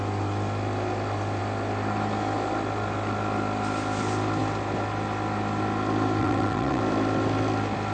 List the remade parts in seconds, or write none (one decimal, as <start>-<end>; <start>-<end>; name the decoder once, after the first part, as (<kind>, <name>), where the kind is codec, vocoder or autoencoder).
6.2-6.8 (vocoder, WaveNeXt)